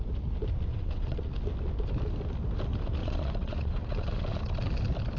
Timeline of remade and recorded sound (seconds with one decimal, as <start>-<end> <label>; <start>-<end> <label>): 0.0-0.7 recorded; 0.7-1.3 remade; 1.3-3.0 recorded; 3.0-4.4 remade; 4.4-5.2 recorded